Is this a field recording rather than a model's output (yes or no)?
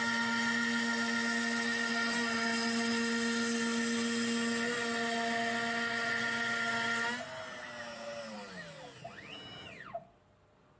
yes